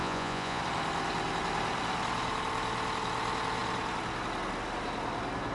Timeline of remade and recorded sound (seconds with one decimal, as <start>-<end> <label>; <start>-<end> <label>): 0.0-0.6 remade; 0.6-5.5 recorded